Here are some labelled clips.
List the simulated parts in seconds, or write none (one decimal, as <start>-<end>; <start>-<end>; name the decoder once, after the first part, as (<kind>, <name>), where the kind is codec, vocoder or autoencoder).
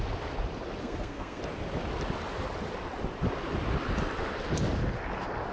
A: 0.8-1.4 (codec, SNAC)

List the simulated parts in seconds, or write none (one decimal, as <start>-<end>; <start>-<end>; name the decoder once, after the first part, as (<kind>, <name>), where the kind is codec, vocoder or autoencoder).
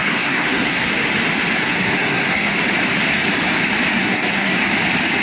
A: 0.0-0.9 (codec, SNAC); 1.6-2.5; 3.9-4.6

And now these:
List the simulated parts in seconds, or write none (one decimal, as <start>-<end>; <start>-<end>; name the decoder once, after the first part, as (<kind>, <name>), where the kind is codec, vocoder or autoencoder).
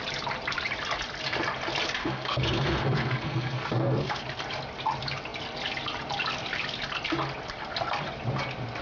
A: 2.0-4.2 (codec, SNAC)